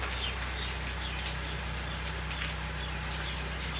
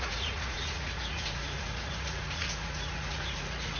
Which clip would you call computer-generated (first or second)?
second